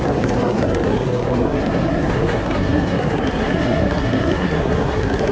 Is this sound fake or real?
fake